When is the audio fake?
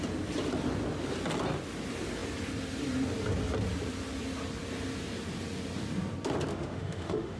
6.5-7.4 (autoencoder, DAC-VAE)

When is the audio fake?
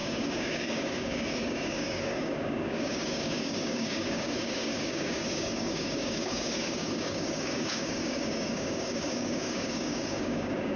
0.0-10.8 (codec, DAC)